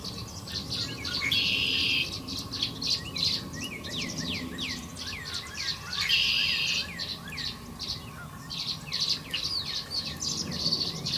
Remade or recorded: recorded